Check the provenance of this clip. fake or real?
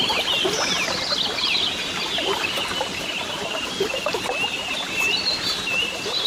real